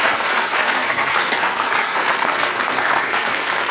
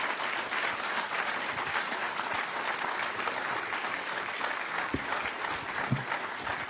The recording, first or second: second